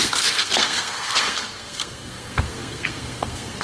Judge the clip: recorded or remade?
remade